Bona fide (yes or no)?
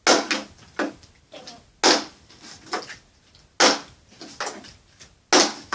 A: yes